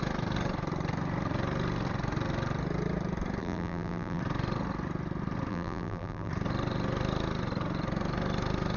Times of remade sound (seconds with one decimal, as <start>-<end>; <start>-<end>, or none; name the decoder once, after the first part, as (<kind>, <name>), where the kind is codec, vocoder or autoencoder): 3.4-4.2 (vocoder, BigVGAN v2); 5.5-6.3